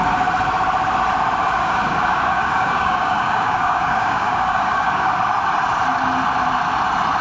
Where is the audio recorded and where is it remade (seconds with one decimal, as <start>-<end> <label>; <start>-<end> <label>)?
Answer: 0.0-1.6 recorded; 1.6-5.2 remade; 5.2-7.2 recorded